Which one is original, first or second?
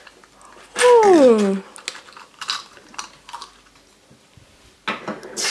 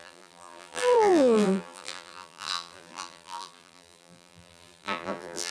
first